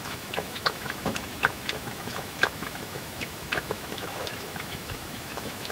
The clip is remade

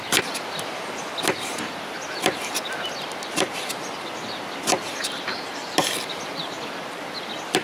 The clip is recorded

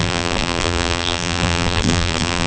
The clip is remade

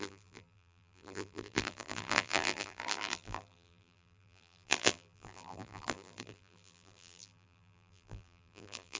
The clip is remade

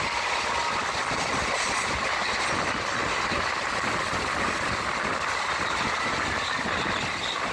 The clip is recorded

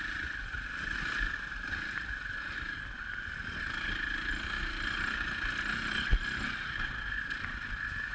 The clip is recorded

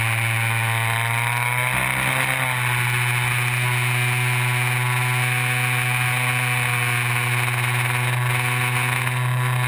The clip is recorded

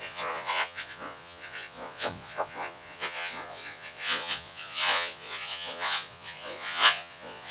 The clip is remade